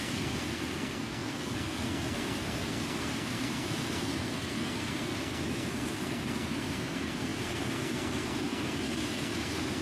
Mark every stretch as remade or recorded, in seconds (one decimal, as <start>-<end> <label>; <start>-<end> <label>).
0.0-9.8 remade